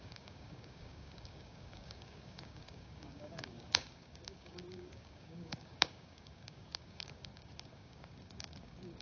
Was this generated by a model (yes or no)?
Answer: yes